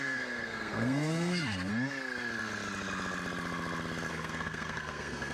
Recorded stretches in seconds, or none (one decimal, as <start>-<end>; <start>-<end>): 1.7-4.1